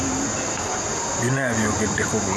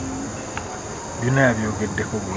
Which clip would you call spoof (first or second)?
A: first